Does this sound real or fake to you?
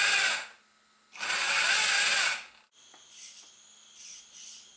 real